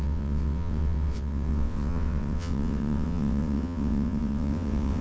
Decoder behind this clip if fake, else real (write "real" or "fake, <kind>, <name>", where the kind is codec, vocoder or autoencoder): fake, vocoder, WaveNeXt